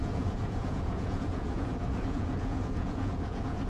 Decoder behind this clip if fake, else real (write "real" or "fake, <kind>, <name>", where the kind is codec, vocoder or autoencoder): fake, vocoder, Vocos